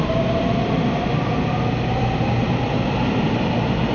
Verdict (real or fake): real